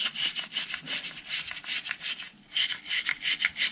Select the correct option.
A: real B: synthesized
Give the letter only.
A